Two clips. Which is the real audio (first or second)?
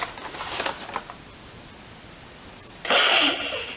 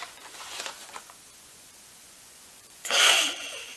first